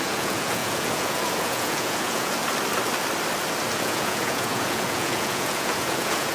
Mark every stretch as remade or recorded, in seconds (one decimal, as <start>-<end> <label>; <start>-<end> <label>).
0.0-2.4 remade; 2.4-3.8 recorded; 3.8-6.3 remade